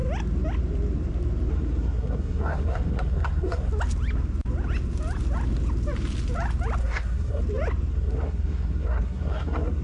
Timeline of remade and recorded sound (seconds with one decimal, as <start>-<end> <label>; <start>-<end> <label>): 0.0-1.5 recorded; 1.5-3.7 remade; 3.7-6.8 recorded; 6.8-7.4 remade; 7.4-7.9 recorded; 7.9-9.8 remade